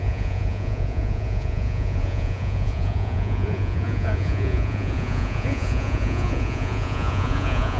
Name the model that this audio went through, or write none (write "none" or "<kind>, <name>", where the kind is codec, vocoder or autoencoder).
vocoder, Vocos